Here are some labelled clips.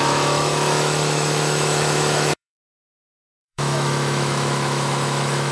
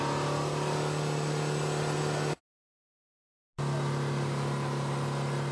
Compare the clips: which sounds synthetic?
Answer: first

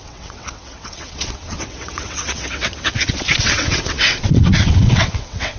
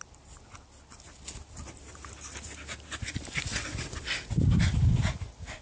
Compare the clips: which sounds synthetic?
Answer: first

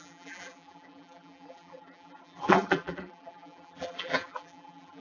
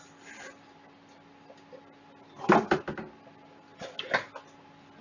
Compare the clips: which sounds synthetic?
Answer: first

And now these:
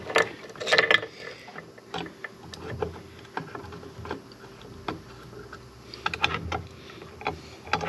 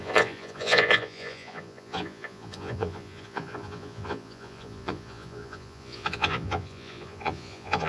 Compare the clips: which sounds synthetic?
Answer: second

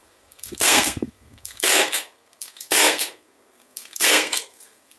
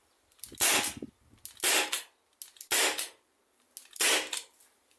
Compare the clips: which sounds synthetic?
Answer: first